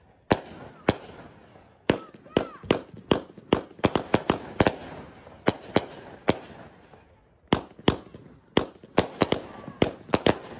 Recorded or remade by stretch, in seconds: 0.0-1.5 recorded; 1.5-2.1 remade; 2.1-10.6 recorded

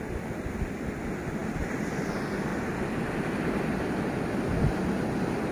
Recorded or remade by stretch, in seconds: 0.0-5.5 recorded

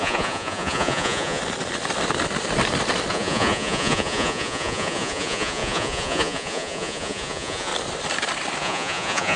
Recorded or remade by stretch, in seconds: 0.0-1.4 remade; 1.4-3.1 recorded; 3.1-7.7 remade; 7.7-8.6 recorded; 8.6-9.4 remade